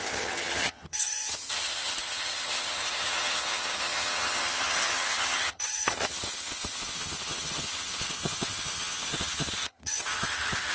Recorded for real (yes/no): no